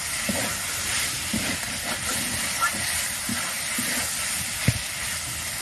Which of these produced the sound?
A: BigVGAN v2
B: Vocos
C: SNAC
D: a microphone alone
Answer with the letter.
D